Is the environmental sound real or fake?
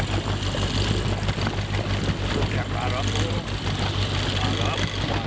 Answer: real